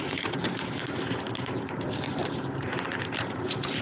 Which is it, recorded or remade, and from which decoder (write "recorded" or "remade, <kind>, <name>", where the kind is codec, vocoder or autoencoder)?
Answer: remade, vocoder, BigVGAN v2